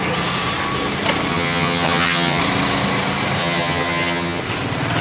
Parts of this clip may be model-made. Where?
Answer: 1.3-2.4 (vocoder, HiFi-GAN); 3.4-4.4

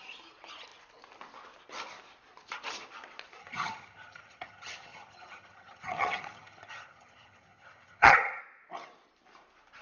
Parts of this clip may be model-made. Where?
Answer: 3.4-8.4 (vocoder, HiFi-GAN)